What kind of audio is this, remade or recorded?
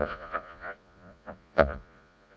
remade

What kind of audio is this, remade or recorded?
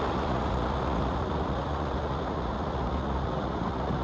remade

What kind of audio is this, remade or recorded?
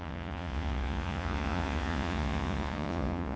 remade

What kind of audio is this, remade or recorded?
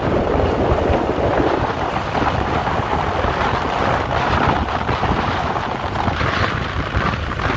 recorded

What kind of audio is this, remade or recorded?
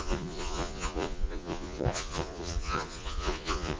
remade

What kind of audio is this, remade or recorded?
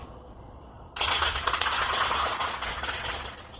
remade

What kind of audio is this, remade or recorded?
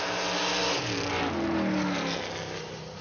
recorded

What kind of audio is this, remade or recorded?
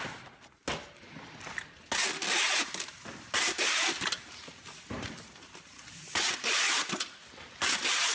recorded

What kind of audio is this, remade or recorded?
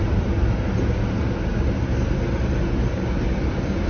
recorded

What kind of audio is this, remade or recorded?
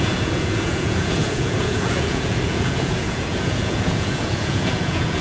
remade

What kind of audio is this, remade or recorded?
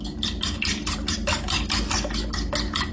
recorded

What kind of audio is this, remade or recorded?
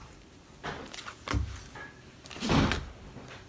recorded